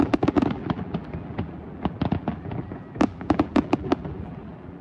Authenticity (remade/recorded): remade